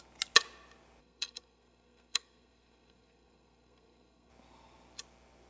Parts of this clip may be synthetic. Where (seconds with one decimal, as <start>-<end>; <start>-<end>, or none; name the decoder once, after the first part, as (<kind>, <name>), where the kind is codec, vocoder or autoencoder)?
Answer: 1.0-4.3 (codec, SNAC)